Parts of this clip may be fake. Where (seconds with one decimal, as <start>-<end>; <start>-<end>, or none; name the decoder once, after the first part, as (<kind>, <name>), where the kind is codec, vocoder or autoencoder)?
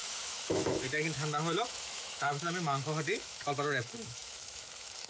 0.0-5.1 (autoencoder, DAC-VAE)